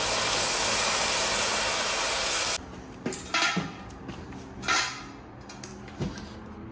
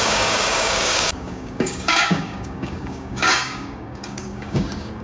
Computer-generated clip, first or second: second